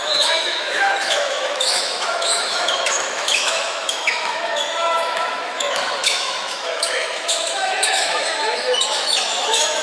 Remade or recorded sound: remade